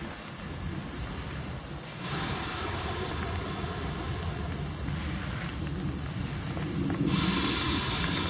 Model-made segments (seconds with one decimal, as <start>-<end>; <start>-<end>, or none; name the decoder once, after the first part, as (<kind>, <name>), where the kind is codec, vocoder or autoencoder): 1.9-3.1 (codec, DAC)